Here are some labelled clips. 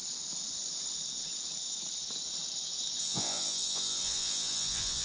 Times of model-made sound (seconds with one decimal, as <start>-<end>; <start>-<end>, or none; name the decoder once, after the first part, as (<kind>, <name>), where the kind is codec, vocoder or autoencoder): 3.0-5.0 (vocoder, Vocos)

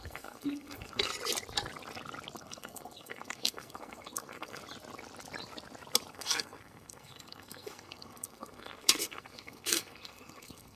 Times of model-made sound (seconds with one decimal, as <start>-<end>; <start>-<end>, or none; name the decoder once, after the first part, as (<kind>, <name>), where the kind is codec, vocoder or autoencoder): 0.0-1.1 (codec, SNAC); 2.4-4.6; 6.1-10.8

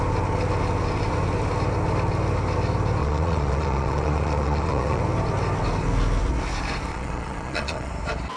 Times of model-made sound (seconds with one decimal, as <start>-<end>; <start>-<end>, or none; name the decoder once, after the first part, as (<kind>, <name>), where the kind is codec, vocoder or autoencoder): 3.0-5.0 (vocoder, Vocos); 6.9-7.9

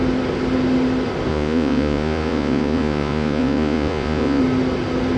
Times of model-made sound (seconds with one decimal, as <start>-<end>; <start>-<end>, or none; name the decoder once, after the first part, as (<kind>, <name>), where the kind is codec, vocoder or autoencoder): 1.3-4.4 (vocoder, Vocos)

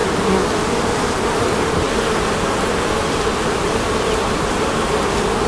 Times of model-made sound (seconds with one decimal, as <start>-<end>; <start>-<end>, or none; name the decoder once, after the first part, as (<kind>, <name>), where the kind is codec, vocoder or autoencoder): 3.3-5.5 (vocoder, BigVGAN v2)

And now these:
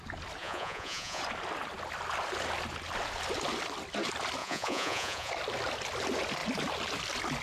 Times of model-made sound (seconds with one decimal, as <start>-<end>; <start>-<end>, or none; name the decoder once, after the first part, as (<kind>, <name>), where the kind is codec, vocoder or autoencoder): 0.4-1.2 (vocoder, Vocos); 4.4-5.3